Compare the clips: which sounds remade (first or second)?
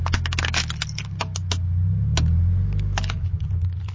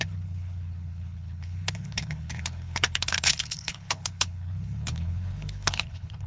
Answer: second